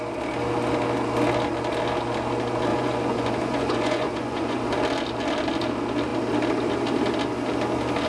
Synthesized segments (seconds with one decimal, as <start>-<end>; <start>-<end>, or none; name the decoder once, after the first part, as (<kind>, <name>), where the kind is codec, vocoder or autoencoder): 2.7-4.6 (vocoder, Vocos)